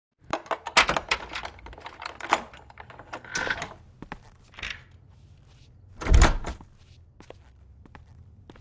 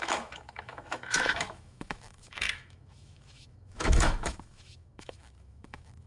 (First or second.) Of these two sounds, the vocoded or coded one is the second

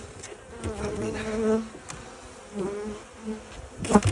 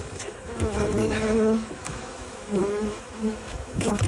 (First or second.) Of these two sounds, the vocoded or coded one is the second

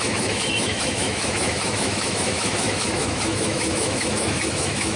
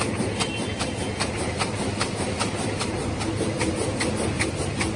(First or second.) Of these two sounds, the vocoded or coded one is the first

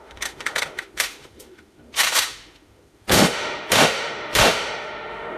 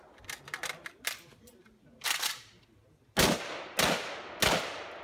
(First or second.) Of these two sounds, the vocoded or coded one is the first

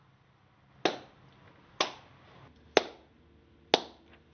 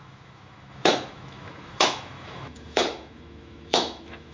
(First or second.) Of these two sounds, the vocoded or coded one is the second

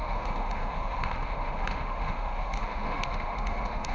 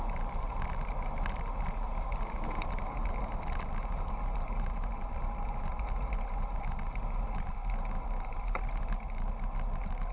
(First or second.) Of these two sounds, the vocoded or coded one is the first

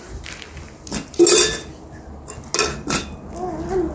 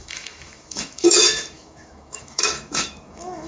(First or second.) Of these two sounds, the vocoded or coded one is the second